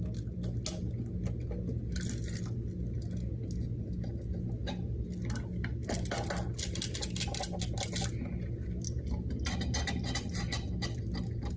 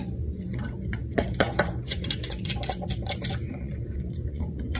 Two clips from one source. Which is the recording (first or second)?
first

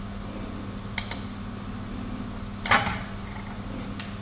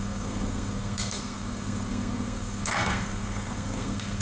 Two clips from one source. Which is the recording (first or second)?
first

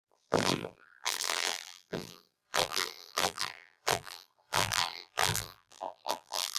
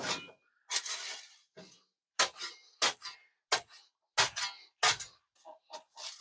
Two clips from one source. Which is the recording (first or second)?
second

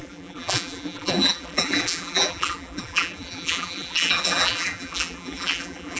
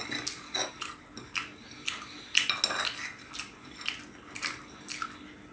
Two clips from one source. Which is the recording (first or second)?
second